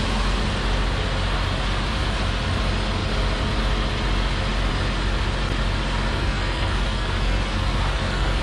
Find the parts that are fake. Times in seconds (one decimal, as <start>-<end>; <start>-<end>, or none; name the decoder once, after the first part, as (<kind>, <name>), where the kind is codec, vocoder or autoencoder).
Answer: 6.2-8.4 (codec, SNAC)